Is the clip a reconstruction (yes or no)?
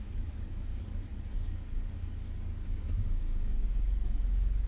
yes